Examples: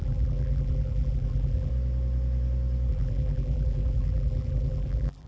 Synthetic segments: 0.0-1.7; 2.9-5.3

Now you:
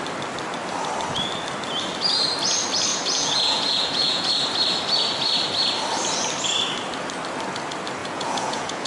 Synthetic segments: 2.9-4.3; 8.0-8.9